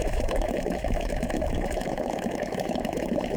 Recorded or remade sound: remade